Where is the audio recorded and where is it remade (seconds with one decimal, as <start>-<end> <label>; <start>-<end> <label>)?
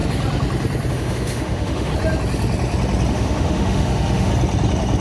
0.0-0.9 recorded; 0.9-1.9 remade; 1.9-3.1 recorded; 3.1-4.3 remade; 4.3-5.0 recorded